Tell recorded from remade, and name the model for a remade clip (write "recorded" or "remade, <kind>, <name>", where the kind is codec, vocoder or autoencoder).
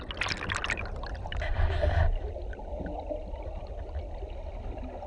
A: recorded